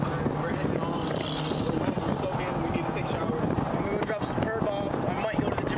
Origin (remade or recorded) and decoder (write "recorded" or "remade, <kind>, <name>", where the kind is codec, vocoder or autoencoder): recorded